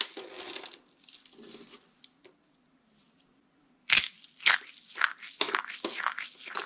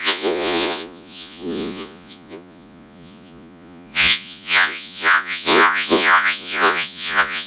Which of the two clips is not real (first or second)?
second